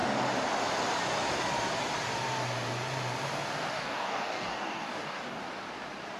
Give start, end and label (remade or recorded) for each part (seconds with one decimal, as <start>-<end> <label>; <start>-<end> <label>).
0.0-3.7 recorded; 3.7-5.4 remade; 5.4-6.2 recorded